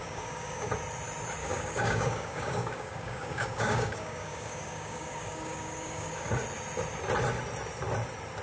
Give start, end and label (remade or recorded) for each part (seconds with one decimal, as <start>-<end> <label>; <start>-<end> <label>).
0.0-0.7 remade; 0.7-1.4 recorded; 1.4-6.3 remade; 6.3-8.4 recorded